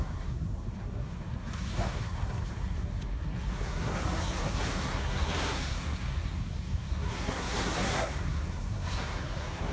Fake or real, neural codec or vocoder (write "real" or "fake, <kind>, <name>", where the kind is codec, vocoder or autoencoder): fake, codec, SNAC